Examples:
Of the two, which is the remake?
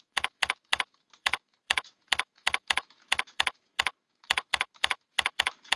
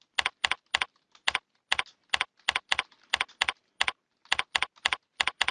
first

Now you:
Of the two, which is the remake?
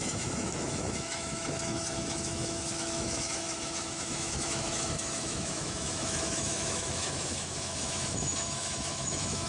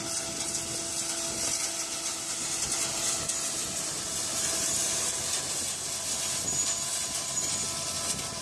first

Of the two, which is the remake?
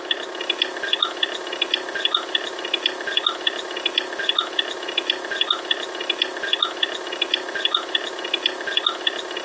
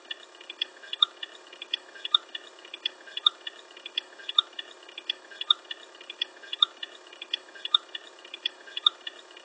second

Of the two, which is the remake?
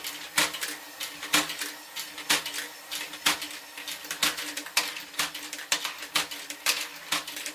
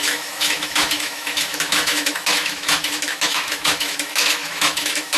second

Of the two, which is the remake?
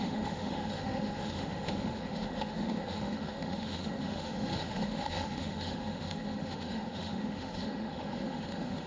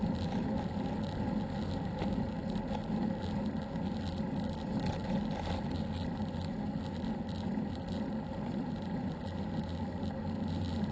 first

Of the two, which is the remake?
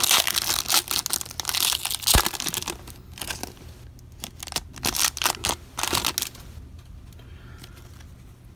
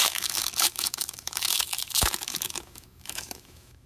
second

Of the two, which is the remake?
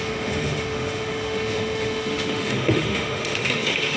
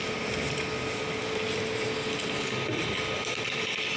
first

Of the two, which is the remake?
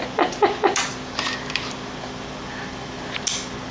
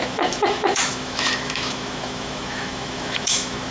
second